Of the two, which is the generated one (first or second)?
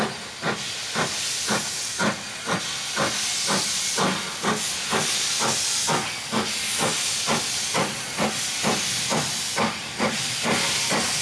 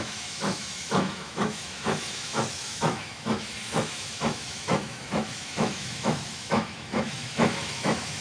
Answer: second